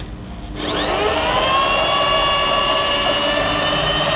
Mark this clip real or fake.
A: real